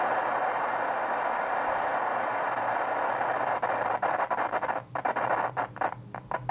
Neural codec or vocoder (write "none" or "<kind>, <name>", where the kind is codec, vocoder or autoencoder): none